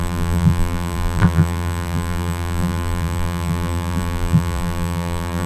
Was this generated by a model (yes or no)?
yes